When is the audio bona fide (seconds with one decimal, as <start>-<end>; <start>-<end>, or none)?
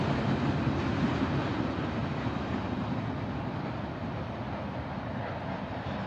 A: 0.0-6.1